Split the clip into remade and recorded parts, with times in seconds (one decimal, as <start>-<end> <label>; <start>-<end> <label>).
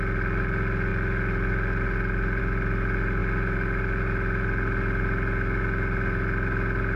0.0-7.0 recorded